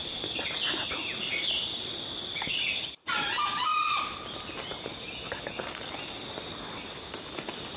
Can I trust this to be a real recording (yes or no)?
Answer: yes